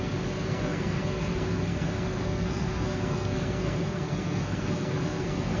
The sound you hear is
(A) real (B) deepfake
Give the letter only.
B